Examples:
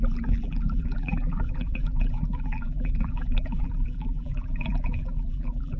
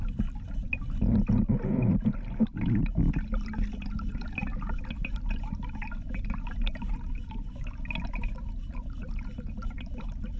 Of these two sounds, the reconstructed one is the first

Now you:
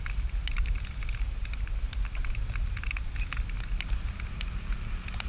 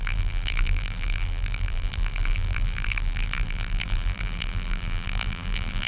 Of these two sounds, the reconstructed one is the second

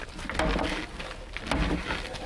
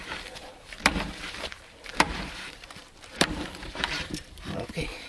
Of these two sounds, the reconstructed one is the second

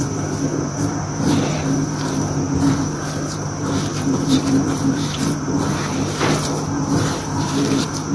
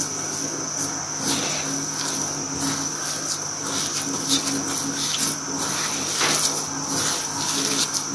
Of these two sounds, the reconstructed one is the first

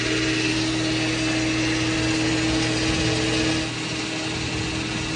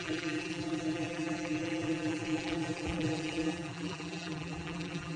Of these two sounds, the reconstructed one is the second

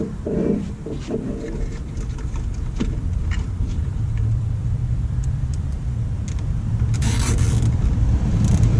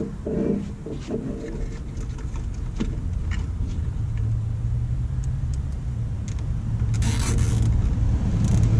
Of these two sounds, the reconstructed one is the first